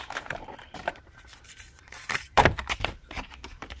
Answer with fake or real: fake